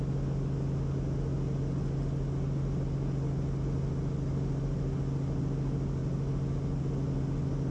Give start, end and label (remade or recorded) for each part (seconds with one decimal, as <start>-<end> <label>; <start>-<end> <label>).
0.0-7.7 recorded

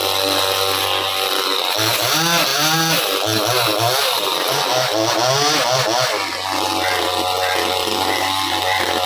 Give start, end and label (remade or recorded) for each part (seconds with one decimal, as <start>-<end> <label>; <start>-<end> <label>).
0.0-9.1 recorded

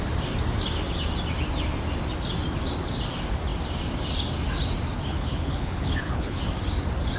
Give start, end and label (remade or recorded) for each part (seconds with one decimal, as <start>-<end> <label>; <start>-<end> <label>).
0.0-5.1 recorded; 5.1-6.4 remade; 6.4-7.2 recorded

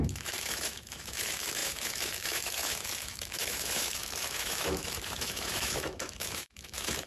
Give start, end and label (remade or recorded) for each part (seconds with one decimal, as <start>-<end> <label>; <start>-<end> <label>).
0.0-7.1 remade

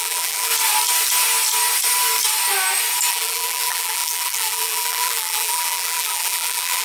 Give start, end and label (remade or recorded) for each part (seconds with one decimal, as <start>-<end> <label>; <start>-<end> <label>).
0.0-0.5 remade; 0.5-3.1 recorded; 3.1-6.8 remade

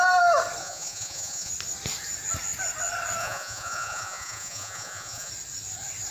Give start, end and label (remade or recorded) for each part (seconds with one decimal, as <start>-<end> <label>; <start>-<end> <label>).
0.0-0.6 recorded; 0.6-1.5 remade; 1.5-3.2 recorded; 3.2-5.3 remade; 5.3-6.1 recorded

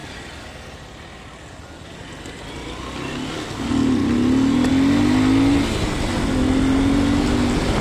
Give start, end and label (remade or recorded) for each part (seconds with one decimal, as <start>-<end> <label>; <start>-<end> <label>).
0.0-7.8 recorded

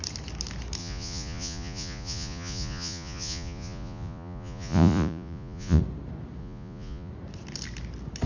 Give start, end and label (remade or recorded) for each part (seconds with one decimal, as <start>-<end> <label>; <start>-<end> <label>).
0.0-0.8 recorded; 0.8-5.8 remade; 5.8-6.4 recorded; 6.4-7.1 remade; 7.1-8.3 recorded